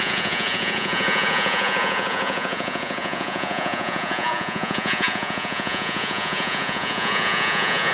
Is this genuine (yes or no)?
no